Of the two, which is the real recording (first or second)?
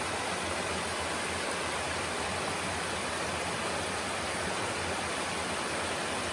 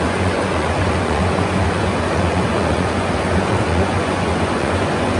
first